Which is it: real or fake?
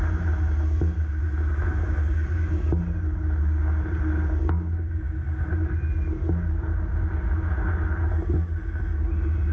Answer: real